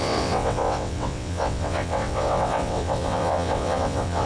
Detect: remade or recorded remade